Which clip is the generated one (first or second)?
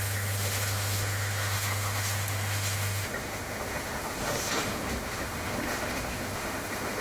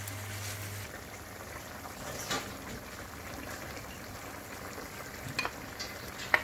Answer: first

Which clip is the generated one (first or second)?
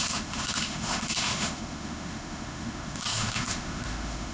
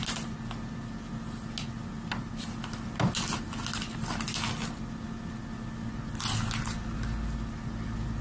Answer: first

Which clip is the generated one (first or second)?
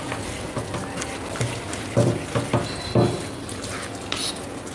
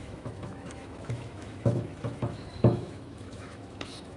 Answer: second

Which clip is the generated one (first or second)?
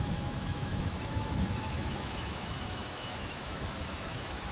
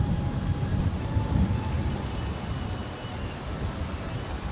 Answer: first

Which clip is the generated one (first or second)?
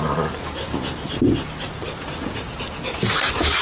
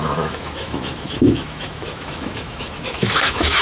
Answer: second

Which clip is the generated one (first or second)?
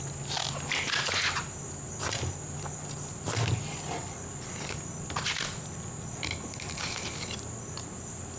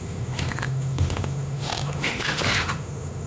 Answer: second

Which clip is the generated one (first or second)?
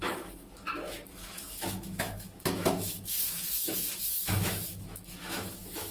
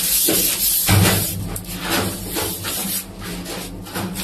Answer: first